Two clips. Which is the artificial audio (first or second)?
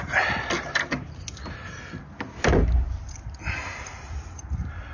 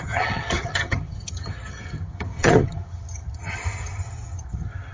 second